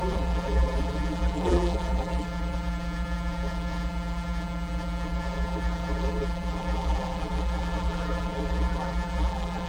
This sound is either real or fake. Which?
fake